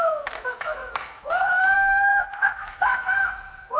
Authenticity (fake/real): real